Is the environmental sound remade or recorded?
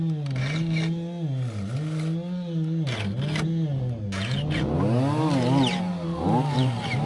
recorded